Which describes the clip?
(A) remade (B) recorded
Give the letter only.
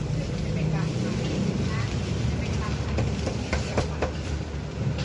A